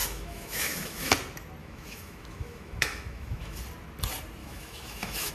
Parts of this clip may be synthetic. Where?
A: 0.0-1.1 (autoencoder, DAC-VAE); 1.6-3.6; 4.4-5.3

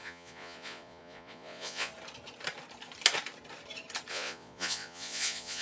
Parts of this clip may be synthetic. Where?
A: 0.0-1.9 (vocoder, Vocos); 4.1-5.6